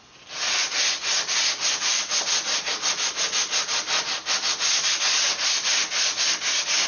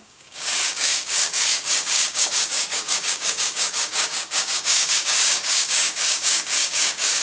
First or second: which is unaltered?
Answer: first